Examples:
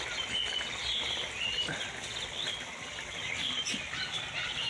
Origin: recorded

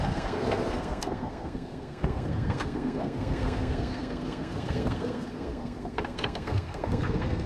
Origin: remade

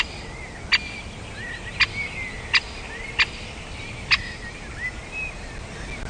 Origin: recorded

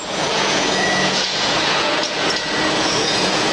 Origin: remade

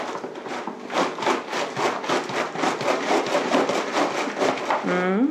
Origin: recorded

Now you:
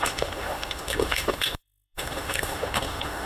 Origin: remade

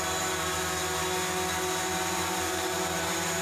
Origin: recorded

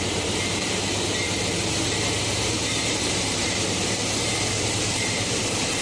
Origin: remade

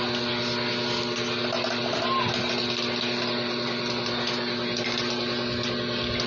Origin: recorded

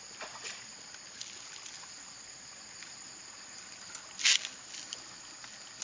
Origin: recorded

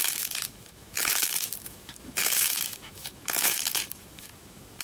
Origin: remade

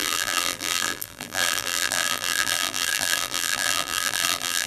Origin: remade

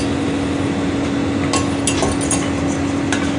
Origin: recorded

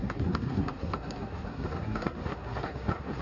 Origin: remade